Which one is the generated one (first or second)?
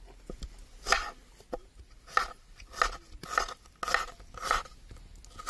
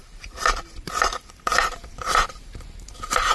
second